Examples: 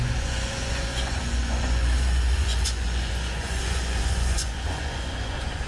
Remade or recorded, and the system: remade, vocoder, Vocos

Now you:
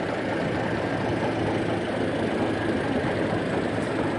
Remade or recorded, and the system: recorded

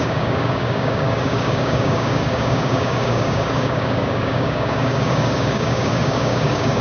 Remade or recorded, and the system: remade, codec, DAC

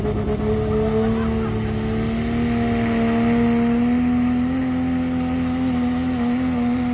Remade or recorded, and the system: recorded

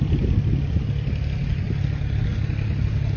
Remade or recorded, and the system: recorded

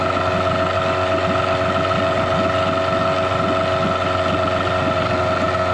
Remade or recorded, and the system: recorded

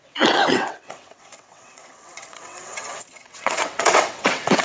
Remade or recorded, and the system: remade, vocoder, WaveNeXt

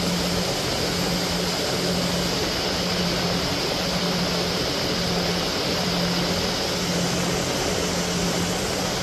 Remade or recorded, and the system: recorded